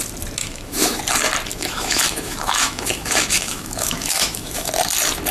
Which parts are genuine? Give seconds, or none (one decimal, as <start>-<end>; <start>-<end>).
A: 0.0-0.4; 1.0-1.5; 4.7-5.3